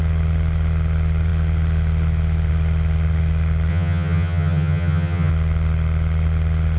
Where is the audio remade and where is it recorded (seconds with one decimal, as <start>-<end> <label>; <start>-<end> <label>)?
0.0-3.7 recorded; 3.7-5.3 remade; 5.3-6.8 recorded